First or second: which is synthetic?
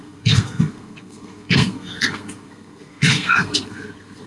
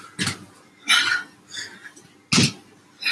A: first